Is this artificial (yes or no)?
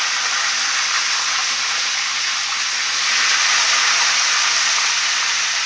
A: no